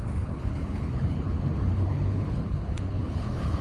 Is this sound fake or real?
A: fake